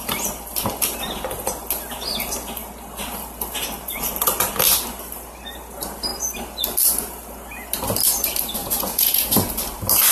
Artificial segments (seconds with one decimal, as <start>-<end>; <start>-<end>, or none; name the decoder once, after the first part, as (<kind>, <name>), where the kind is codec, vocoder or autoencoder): 8.6-9.5 (vocoder, Vocos)